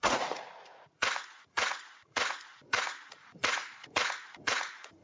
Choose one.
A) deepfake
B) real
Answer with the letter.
A